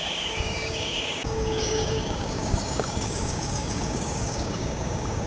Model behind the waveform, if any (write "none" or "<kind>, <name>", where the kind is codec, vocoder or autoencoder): codec, DAC